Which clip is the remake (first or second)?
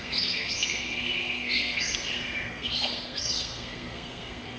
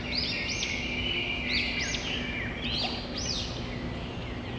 first